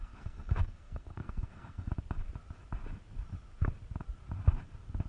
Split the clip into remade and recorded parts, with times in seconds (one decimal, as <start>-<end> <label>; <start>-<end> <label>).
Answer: 0.0-1.9 remade; 1.9-5.1 recorded